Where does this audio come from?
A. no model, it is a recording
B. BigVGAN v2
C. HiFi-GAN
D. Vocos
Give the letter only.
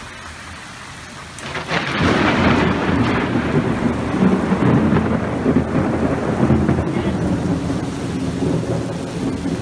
A